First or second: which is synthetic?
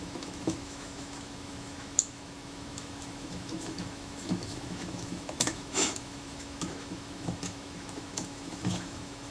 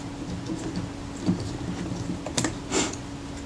first